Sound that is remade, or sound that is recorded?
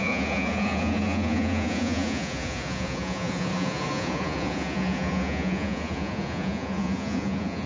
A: remade